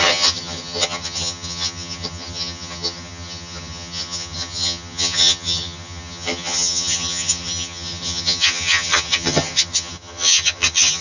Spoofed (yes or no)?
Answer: yes